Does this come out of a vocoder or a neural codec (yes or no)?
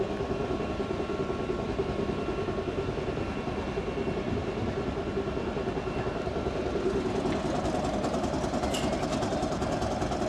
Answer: no